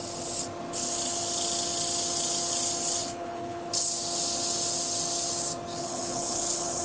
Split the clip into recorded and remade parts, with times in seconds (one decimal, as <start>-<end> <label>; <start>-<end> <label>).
0.0-3.0 recorded; 3.0-3.7 remade; 3.7-5.8 recorded; 5.8-6.8 remade